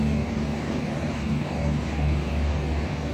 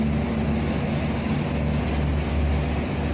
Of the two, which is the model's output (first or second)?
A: first